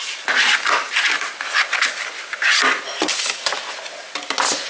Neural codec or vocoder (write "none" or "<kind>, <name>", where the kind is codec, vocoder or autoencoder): none